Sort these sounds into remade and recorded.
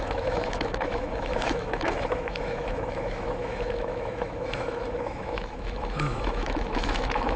remade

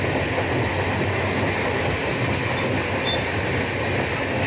recorded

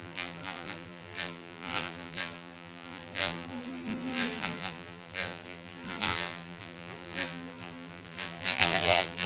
remade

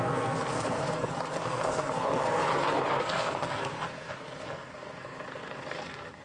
remade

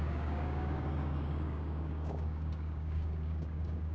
remade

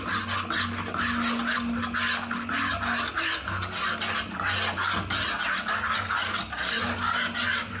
recorded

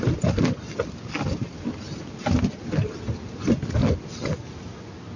recorded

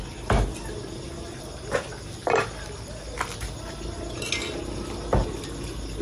recorded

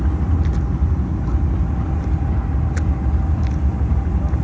recorded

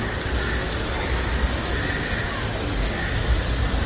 recorded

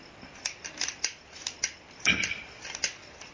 recorded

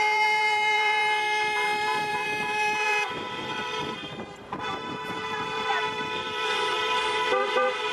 remade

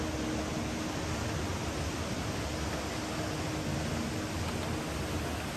recorded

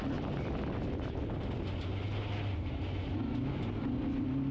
recorded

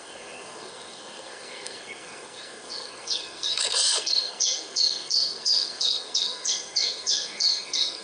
remade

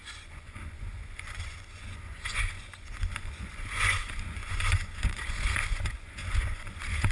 remade